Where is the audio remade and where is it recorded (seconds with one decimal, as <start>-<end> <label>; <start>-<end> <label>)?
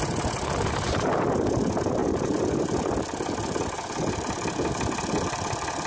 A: 0.0-5.9 recorded